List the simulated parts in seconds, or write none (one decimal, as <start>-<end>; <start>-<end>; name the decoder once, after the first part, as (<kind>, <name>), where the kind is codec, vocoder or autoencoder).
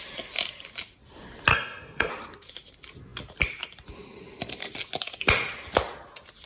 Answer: 1.5-2.1 (codec, SNAC)